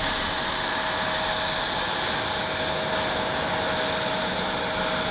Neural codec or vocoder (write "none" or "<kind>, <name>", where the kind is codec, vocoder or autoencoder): none